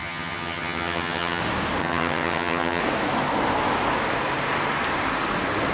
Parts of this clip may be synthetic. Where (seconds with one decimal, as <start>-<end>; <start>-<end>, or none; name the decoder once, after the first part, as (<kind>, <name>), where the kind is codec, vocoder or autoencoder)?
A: 0.0-1.4 (vocoder, HiFi-GAN); 1.8-2.8